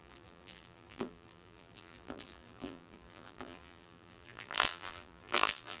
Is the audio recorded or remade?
remade